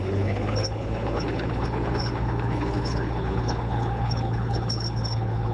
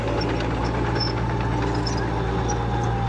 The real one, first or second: second